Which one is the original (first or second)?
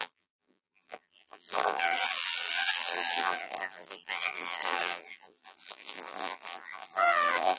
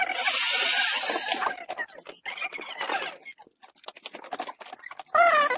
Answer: second